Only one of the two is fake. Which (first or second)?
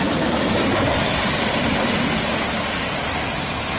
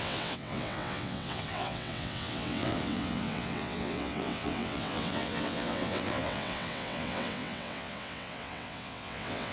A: second